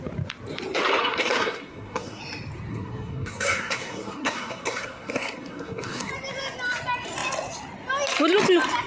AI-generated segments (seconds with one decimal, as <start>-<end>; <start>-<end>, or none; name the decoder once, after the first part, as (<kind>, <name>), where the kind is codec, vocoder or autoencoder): 1.0-2.2 (codec, SNAC); 2.7-6.1